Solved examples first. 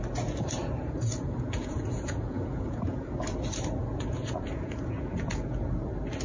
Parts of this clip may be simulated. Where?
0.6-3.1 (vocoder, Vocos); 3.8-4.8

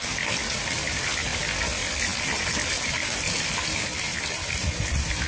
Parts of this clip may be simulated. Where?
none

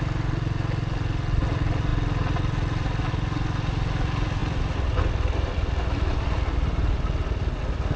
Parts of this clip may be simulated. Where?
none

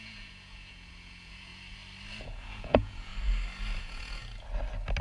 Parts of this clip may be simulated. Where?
0.0-1.5 (vocoder, Vocos); 2.2-3.1; 3.8-4.2

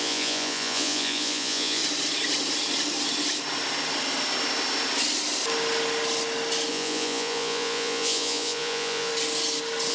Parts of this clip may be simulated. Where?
0.0-1.8 (vocoder, Vocos); 6.7-9.1